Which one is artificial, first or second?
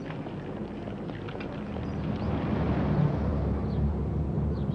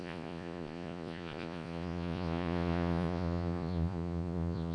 second